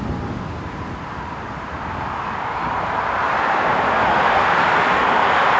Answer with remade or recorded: recorded